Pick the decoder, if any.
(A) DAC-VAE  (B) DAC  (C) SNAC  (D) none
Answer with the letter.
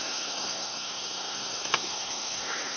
C